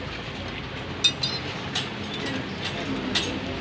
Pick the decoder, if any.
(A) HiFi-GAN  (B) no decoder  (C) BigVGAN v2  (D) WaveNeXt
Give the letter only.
B